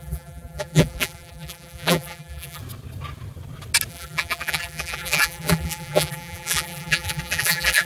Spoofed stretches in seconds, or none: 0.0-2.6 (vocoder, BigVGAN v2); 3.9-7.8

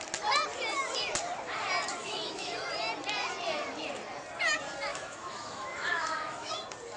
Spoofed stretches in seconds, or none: 2.0-2.7 (autoencoder, DAC-VAE); 4.9-6.5